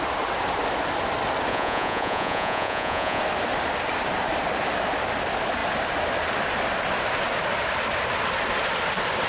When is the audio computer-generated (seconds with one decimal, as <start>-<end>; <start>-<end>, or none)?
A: 1.5-3.2